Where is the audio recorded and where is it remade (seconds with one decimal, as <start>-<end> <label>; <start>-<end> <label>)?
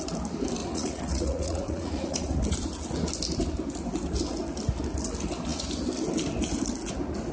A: 0.0-0.6 recorded; 0.6-2.4 remade; 2.4-7.3 recorded